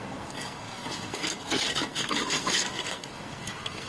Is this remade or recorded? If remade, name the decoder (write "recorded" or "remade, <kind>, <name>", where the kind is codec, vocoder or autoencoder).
remade, codec, SNAC